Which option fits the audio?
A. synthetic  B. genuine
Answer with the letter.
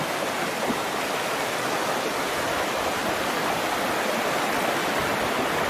B